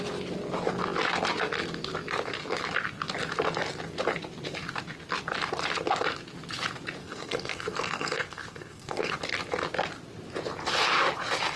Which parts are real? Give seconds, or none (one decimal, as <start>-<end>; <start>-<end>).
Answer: 0.0-7.0; 9.1-11.6